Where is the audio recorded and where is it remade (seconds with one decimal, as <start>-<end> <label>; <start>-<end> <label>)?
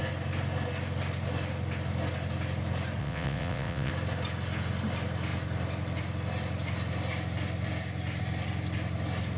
0.0-3.0 recorded; 3.0-3.9 remade; 3.9-9.4 recorded